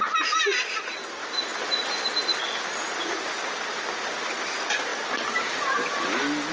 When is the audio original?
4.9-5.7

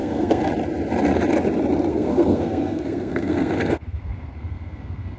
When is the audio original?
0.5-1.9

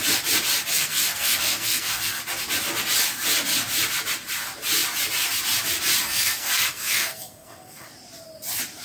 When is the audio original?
0.0-0.7; 2.2-6.0; 7.9-8.8